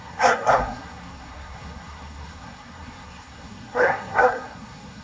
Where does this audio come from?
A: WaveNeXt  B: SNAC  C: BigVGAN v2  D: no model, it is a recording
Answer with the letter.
B